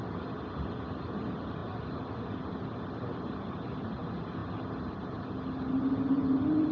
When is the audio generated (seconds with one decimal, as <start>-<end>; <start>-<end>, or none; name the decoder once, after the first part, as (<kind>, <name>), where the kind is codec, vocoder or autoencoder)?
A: none